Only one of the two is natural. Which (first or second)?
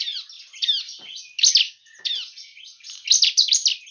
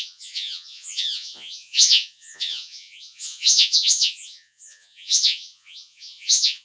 first